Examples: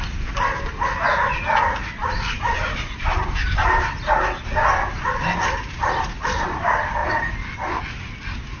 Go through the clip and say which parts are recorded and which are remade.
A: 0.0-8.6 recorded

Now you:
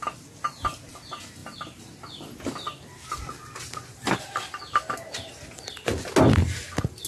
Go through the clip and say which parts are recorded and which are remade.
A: 0.0-7.1 recorded